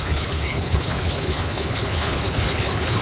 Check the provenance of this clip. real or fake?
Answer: fake